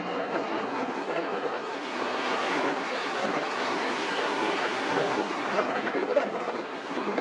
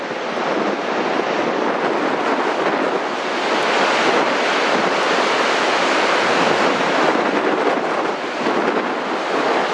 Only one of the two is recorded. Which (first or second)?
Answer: second